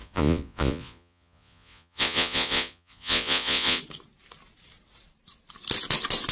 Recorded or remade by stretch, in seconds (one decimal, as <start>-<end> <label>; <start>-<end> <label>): 0.0-3.8 remade; 3.8-6.3 recorded